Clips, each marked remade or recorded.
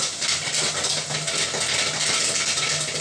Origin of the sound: recorded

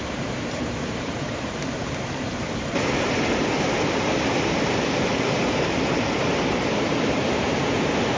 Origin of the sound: remade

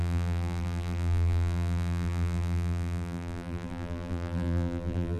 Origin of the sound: remade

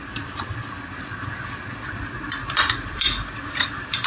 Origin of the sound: remade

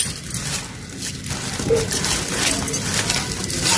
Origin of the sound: recorded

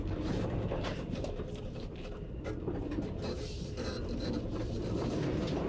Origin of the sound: remade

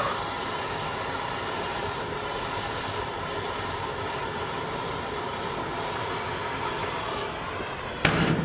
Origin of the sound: remade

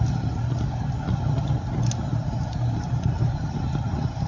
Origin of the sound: recorded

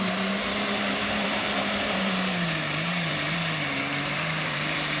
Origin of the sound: remade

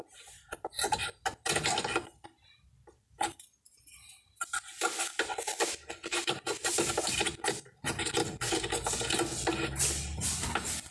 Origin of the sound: recorded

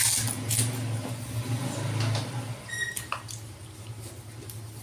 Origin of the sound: recorded